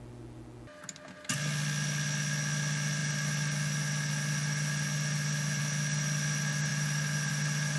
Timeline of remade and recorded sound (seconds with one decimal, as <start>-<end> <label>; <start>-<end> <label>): 0.0-7.8 recorded